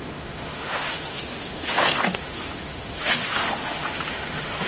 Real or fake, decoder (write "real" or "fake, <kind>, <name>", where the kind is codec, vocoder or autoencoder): fake, autoencoder, DAC-VAE